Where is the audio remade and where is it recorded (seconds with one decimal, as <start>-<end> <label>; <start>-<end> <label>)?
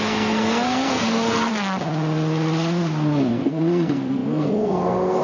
0.0-1.5 remade; 1.5-3.3 recorded; 3.3-5.2 remade